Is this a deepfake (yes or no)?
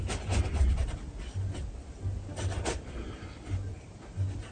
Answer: no